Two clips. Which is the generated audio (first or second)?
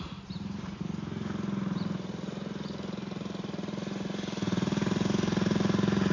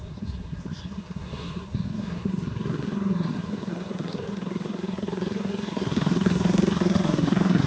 second